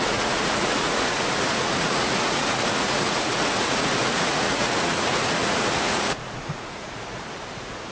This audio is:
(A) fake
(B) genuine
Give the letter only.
A